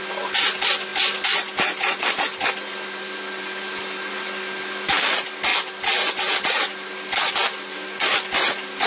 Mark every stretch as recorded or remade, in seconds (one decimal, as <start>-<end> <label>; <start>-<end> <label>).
0.0-8.9 recorded

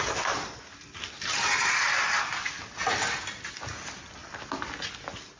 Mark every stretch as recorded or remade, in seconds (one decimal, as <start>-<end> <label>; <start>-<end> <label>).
0.0-5.4 recorded

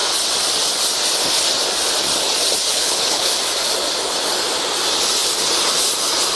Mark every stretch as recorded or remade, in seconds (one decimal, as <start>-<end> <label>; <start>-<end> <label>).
0.0-2.7 recorded; 2.7-3.3 remade; 3.3-6.4 recorded

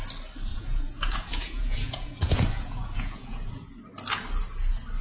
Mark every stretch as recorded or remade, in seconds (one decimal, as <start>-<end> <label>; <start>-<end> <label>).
0.0-0.5 recorded; 0.5-3.5 remade; 3.5-5.0 recorded

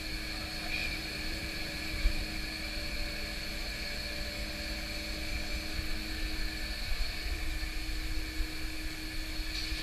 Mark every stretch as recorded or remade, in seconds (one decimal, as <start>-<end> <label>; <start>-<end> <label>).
0.0-0.8 recorded; 0.8-2.2 remade; 2.2-9.8 recorded

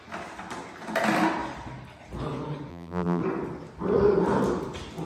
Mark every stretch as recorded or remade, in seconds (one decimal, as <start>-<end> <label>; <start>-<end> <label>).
0.0-2.7 recorded; 2.7-3.2 remade; 3.2-5.0 recorded